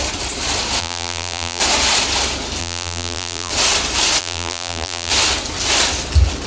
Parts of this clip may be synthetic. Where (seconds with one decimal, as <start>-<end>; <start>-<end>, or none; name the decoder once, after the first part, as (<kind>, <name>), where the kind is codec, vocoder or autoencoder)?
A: 0.8-1.6 (vocoder, BigVGAN v2); 2.6-3.5; 4.2-5.1